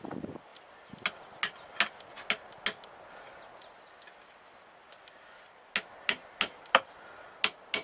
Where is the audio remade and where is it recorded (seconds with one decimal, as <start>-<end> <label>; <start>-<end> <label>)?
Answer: 0.0-7.8 recorded